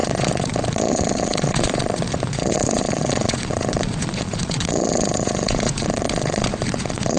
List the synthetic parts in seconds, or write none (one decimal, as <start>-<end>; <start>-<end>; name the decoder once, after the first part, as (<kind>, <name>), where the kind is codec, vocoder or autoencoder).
0.0-7.2 (vocoder, Vocos)

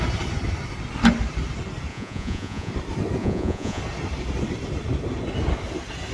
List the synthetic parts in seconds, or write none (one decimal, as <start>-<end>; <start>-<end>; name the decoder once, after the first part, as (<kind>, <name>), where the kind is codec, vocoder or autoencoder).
1.9-2.7 (vocoder, Vocos); 3.2-3.8

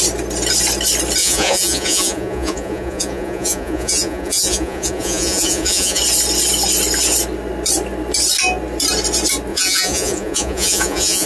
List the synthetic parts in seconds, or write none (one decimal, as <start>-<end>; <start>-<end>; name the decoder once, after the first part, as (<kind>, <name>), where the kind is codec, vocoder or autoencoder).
1.2-6.0 (vocoder, Vocos); 9.5-11.3

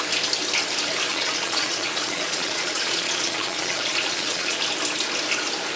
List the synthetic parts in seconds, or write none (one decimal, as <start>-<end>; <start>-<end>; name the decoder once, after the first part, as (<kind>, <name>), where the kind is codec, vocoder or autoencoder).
1.1-4.6 (vocoder, Vocos)

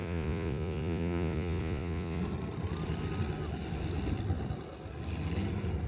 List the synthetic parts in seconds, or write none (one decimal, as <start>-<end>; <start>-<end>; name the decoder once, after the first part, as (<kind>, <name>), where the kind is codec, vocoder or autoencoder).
0.0-2.2 (vocoder, Vocos)